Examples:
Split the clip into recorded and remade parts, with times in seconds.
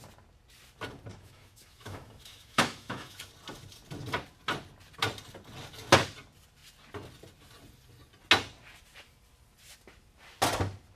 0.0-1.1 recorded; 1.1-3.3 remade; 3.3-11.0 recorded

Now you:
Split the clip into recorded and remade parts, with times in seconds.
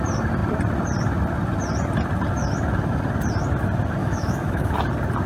0.0-4.0 recorded; 4.0-4.7 remade; 4.7-5.3 recorded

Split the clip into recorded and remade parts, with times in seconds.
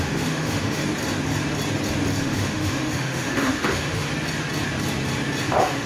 0.0-0.8 remade; 0.8-2.2 recorded; 2.2-4.1 remade; 4.1-5.5 recorded; 5.5-5.9 remade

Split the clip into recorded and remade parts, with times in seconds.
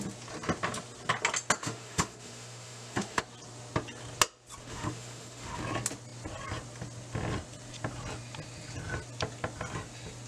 0.0-1.6 recorded; 1.6-3.2 remade; 3.2-4.6 recorded; 4.6-5.6 remade; 5.6-10.3 recorded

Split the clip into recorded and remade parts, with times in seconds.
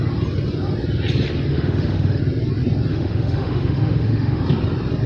0.0-1.5 recorded; 1.5-2.2 remade; 2.2-2.9 recorded; 2.9-4.4 remade; 4.4-5.1 recorded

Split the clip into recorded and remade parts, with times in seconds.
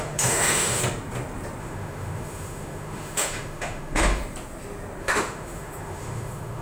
0.0-0.8 remade; 0.8-1.6 recorded; 1.6-4.2 remade; 4.2-5.0 recorded; 5.0-6.6 remade